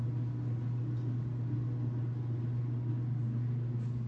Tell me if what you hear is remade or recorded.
recorded